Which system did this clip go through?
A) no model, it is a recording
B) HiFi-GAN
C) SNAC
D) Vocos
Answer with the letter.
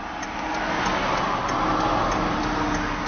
A